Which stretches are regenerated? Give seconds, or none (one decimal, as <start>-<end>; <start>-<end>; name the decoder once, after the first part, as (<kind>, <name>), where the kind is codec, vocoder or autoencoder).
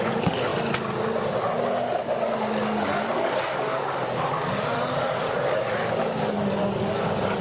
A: 0.0-0.5 (codec, DAC); 2.0-7.4